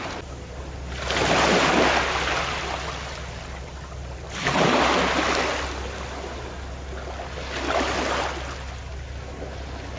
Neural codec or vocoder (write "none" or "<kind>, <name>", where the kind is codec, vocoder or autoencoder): none